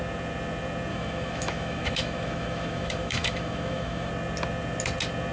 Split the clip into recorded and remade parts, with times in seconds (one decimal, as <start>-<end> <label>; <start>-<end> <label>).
0.0-0.9 recorded; 0.9-4.1 remade; 4.1-5.3 recorded